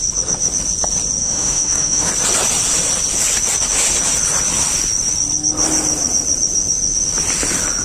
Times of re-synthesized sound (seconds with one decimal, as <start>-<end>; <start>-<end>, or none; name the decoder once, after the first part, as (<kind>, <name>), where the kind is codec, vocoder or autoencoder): 1.2-2.1 (autoencoder, DAC-VAE)